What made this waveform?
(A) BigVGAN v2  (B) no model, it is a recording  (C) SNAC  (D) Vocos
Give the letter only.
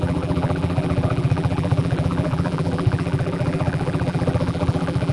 A